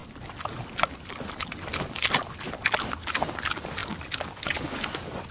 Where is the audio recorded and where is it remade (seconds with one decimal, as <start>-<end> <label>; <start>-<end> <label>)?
0.0-5.3 recorded